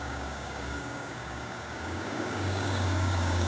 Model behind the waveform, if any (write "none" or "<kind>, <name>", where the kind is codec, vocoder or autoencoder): codec, DAC